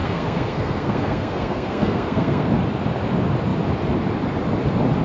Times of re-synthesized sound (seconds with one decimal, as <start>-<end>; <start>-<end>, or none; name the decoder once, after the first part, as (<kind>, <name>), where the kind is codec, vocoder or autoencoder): 0.0-2.5 (codec, SNAC)